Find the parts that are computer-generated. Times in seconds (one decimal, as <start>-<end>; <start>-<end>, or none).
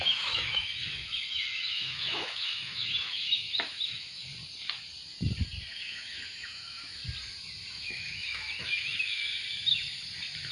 0.0-4.3; 5.7-7.0; 7.7-9.3